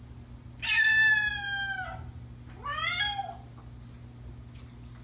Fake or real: real